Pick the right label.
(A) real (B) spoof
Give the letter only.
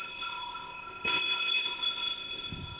B